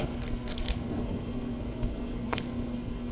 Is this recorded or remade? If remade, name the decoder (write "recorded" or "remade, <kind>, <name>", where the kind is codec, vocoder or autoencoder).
remade, codec, SNAC